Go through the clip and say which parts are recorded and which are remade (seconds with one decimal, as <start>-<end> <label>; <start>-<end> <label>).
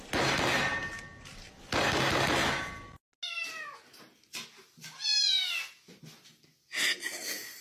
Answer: 0.0-7.6 recorded